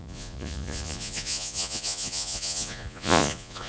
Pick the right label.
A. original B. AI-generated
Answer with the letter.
B